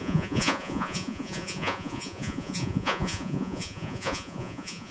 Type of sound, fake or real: fake